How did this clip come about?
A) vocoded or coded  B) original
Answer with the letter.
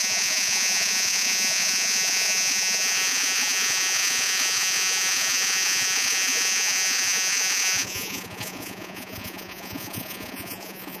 A